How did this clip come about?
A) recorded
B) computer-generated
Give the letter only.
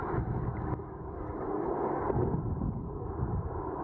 A